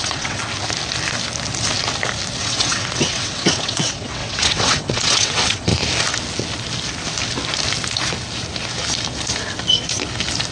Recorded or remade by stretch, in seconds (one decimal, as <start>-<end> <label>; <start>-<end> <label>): 0.0-0.4 remade; 0.4-2.4 recorded; 2.4-5.7 remade; 5.7-10.5 recorded